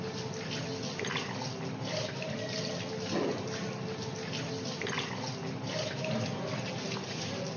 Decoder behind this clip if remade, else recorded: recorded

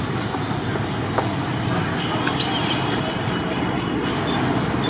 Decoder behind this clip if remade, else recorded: recorded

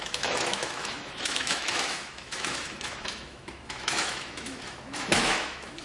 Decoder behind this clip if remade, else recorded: remade, autoencoder, DAC-VAE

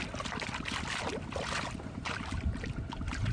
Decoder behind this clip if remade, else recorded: recorded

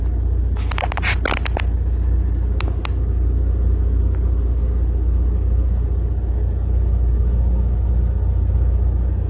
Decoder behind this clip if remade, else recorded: recorded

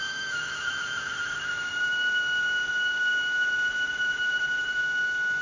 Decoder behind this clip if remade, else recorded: remade, autoencoder, DAC-VAE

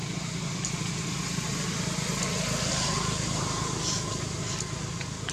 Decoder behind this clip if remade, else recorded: recorded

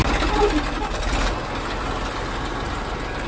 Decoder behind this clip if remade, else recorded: recorded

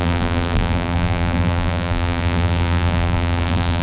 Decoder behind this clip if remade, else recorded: remade, vocoder, BigVGAN v2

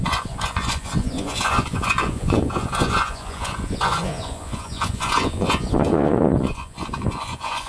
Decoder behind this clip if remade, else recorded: remade, vocoder, Vocos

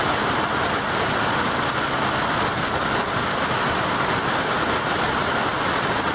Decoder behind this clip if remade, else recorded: recorded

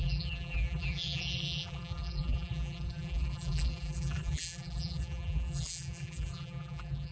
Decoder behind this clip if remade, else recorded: remade, vocoder, BigVGAN v2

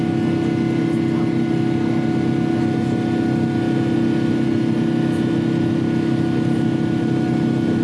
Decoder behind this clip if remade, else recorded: recorded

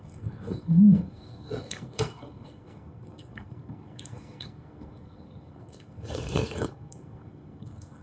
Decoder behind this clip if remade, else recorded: remade, codec, SNAC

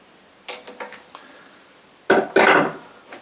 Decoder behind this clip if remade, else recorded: recorded